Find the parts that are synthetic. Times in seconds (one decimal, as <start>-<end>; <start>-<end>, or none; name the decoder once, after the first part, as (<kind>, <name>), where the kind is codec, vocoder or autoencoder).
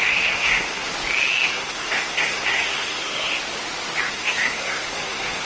0.0-0.9 (codec, SNAC); 1.5-3.4; 4.1-5.4